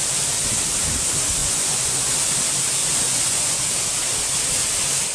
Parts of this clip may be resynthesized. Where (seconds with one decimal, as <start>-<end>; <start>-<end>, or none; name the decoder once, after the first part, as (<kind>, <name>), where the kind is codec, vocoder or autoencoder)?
1.4-2.1 (vocoder, Vocos); 2.8-3.6